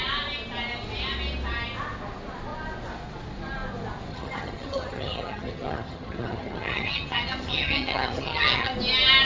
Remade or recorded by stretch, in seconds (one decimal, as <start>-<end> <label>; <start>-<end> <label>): 0.0-4.1 recorded; 4.1-8.7 remade; 8.7-9.2 recorded